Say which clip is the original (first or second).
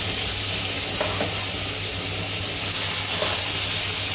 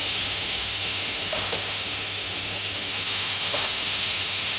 first